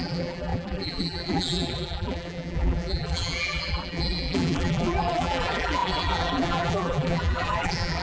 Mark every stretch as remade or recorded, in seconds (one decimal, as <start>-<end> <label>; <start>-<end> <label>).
0.0-8.0 remade